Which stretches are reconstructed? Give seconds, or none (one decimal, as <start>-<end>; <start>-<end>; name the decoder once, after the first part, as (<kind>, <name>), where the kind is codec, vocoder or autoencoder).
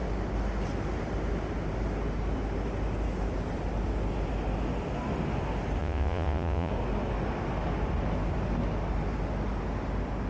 5.8-6.7 (vocoder, Vocos)